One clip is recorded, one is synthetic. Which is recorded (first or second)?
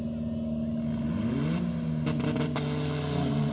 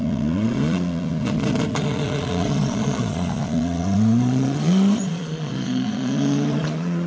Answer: first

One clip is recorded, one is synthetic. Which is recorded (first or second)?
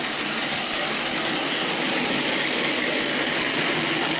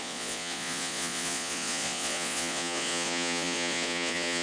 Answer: first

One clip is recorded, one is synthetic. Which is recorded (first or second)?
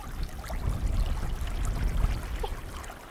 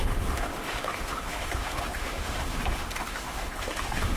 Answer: first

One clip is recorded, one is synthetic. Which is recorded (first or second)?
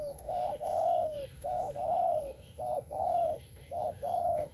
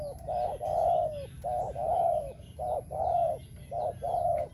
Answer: second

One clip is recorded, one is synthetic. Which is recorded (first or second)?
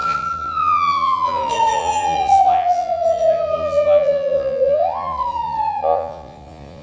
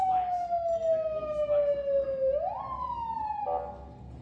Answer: second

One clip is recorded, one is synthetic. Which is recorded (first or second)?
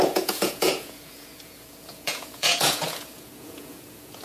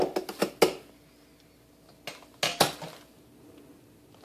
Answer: second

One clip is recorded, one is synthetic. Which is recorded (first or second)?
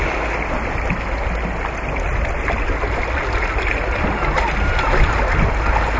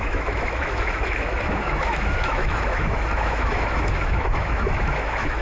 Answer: first